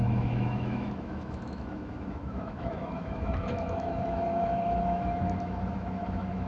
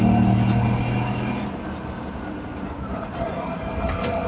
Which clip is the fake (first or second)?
first